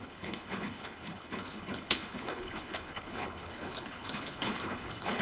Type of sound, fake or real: fake